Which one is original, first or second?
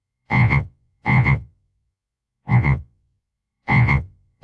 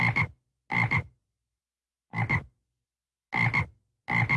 second